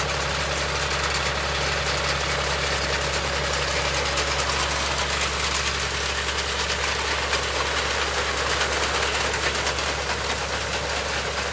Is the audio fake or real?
real